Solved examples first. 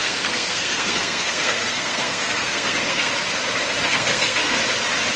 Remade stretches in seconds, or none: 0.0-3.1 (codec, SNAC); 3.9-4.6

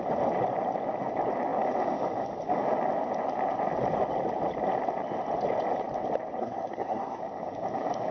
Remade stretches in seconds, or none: 6.4-7.2 (codec, SNAC)